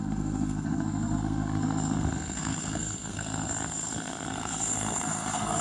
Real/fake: fake